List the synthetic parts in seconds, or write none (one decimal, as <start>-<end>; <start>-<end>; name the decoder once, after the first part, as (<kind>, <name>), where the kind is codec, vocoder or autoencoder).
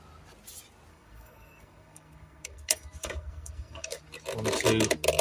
0.9-4.0 (codec, SNAC)